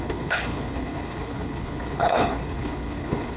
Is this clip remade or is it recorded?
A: remade